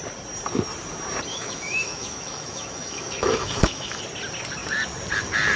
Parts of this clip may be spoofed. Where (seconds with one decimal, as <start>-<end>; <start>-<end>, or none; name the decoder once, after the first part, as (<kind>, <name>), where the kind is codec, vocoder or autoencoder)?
1.3-4.0 (autoencoder, DAC-VAE)